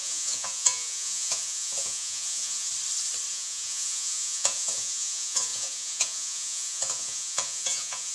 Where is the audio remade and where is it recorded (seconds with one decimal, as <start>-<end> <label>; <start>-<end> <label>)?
0.0-2.7 remade; 2.7-3.3 recorded; 3.3-8.1 remade